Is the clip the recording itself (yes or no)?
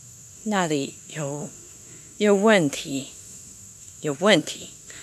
no